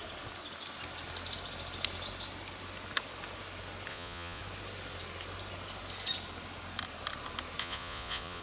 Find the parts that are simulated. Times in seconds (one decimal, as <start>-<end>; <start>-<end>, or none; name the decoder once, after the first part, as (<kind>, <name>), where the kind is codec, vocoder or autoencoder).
3.9-4.4 (vocoder, Vocos); 7.6-8.4